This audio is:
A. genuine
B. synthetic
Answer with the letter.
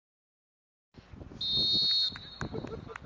A